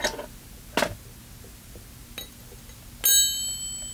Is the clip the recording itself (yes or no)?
yes